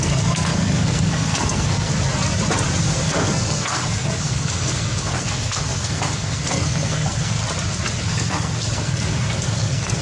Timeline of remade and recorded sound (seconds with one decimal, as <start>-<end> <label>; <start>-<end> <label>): 0.0-1.9 remade; 1.9-2.8 recorded; 2.8-7.4 remade; 7.4-8.0 recorded; 8.0-10.0 remade